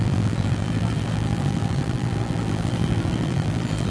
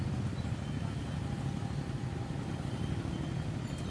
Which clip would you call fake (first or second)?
first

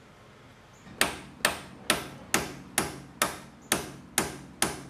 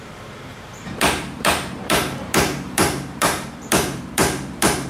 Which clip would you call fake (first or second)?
second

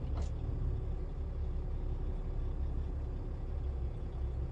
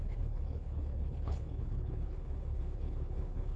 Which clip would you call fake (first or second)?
second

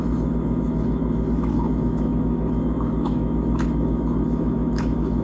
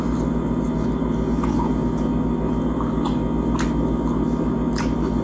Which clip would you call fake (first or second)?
first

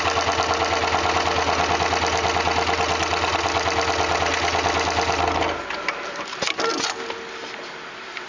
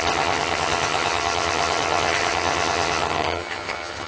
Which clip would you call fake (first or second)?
second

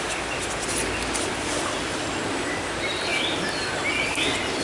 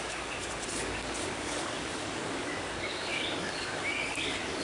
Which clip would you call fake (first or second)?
second